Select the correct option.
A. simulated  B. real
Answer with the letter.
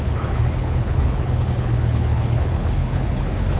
A